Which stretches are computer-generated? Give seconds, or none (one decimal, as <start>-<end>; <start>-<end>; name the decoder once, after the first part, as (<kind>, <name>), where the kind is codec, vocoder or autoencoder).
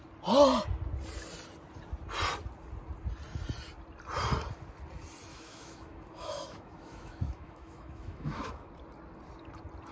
5.3-8.7 (autoencoder, DAC-VAE)